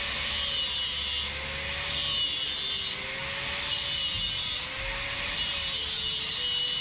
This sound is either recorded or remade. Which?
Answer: recorded